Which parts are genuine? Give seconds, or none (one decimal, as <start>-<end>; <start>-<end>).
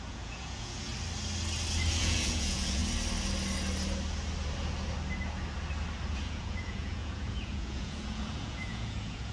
0.9-2.0; 2.8-6.1